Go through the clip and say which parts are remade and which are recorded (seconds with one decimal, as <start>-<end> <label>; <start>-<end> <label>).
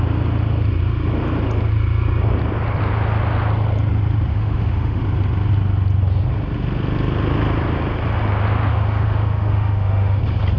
0.0-4.3 recorded; 4.3-5.0 remade; 5.0-8.7 recorded; 8.7-10.2 remade; 10.2-10.6 recorded